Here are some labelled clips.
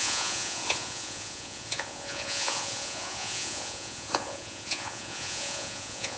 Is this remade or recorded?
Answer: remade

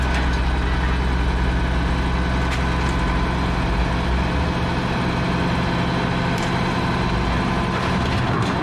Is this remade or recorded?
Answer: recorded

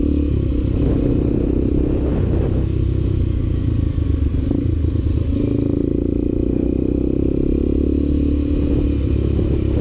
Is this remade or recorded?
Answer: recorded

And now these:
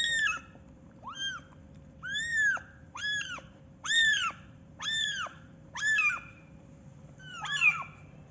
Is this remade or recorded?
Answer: remade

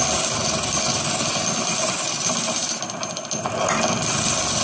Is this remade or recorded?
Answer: recorded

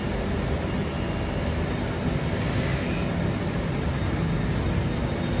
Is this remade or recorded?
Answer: recorded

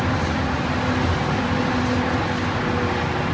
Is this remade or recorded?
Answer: recorded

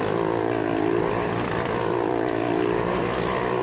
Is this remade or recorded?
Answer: recorded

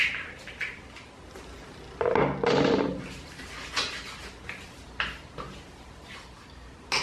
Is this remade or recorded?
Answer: recorded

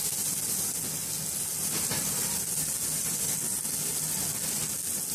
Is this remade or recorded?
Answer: recorded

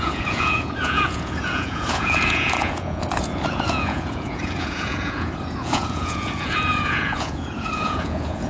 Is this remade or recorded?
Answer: remade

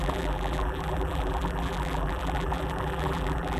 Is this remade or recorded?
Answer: remade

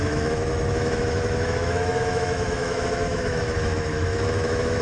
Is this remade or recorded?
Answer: remade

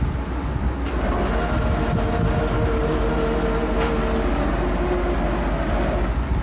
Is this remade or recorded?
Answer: recorded